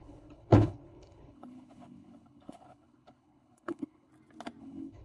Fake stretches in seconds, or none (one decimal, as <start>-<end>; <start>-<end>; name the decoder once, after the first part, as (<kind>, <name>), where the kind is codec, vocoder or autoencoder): 0.0-4.1 (codec, HILCodec); 4.6-5.0